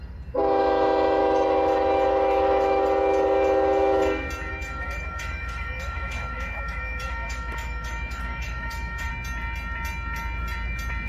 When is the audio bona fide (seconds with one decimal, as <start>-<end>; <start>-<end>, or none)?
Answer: 0.0-1.2; 2.8-4.5; 9.1-11.1